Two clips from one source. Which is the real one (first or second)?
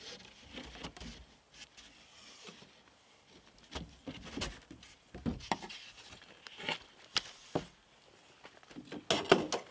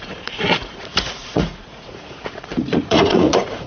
first